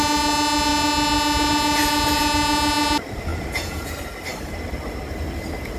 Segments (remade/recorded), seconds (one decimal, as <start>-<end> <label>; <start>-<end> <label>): 0.0-3.3 recorded; 3.3-3.9 remade; 3.9-5.8 recorded